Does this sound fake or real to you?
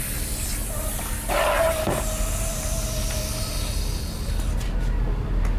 real